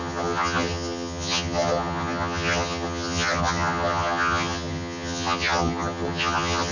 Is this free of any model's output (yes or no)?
no